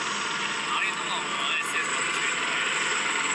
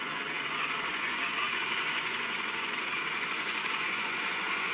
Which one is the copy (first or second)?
second